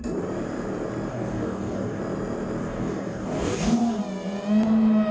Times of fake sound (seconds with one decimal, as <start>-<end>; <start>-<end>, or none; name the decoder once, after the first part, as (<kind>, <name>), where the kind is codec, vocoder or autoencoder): 1.1-2.0 (codec, DAC); 2.6-4.0